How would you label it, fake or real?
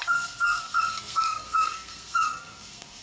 fake